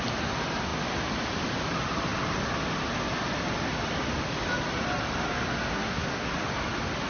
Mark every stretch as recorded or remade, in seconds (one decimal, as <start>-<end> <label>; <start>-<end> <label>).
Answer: 0.0-5.7 recorded; 5.7-6.3 remade; 6.3-7.1 recorded